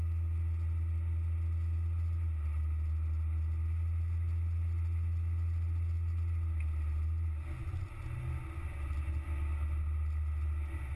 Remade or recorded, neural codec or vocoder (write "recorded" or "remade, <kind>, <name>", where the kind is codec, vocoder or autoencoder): recorded